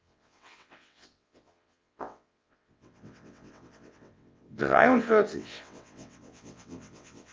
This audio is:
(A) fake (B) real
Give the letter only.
A